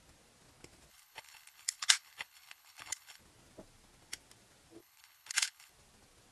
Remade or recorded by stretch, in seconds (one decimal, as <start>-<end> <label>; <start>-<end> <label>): 0.0-0.9 recorded; 0.9-3.2 remade; 3.2-4.8 recorded; 4.8-5.7 remade; 5.7-6.3 recorded